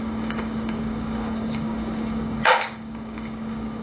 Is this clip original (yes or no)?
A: no